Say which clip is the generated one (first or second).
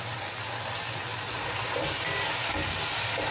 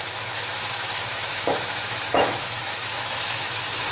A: second